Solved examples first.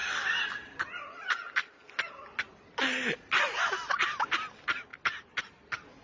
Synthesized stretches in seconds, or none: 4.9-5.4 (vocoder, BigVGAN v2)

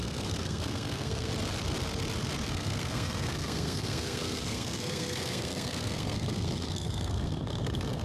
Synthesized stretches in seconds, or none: 0.0-1.3 (codec, SNAC); 2.5-8.0